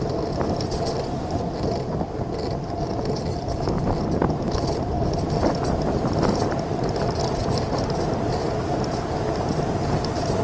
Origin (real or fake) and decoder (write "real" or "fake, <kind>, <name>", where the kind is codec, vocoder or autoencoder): real